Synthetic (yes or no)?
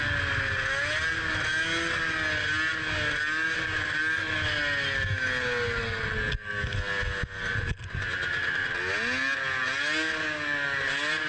no